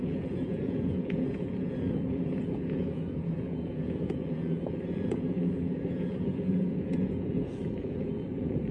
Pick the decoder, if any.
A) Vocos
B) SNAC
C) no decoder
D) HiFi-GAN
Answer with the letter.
A